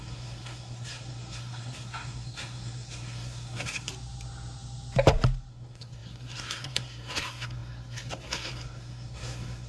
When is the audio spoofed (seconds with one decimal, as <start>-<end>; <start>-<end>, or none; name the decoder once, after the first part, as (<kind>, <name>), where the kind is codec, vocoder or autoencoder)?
0.0-3.9 (codec, SNAC); 5.5-9.7